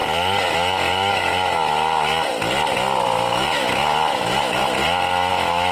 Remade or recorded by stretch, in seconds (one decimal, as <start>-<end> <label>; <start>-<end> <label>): 0.0-1.1 recorded; 1.1-2.1 remade; 2.1-3.3 recorded; 3.3-4.6 remade; 4.6-5.3 recorded; 5.3-5.7 remade